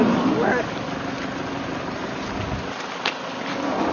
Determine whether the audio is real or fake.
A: real